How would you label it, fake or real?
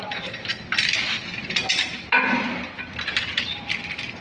real